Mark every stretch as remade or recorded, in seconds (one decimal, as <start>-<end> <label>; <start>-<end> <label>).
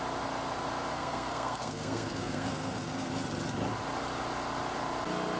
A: 0.0-0.9 recorded; 0.9-3.1 remade; 3.1-5.4 recorded